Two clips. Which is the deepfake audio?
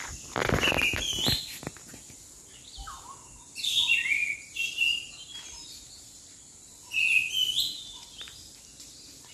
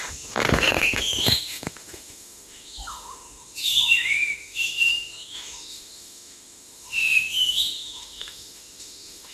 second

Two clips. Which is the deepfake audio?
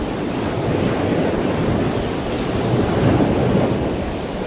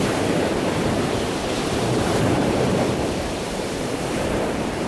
second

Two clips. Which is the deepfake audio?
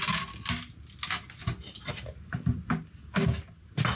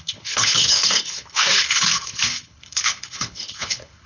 second